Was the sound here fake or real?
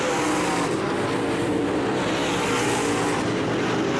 real